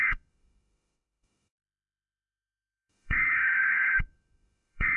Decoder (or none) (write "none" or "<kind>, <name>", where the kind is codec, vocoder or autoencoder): autoencoder, DAC-VAE